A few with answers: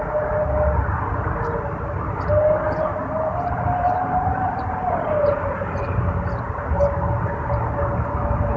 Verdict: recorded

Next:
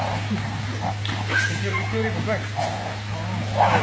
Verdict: recorded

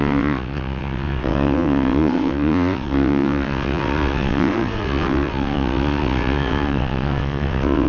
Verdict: remade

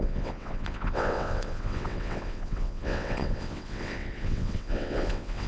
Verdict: remade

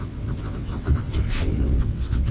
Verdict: remade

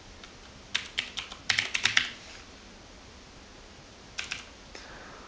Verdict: recorded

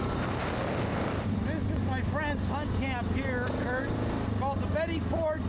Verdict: recorded